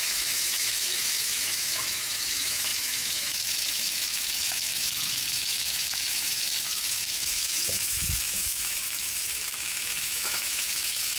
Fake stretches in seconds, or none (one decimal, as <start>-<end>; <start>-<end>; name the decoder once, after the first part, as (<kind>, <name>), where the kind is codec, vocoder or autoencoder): 0.0-11.2 (autoencoder, DAC-VAE)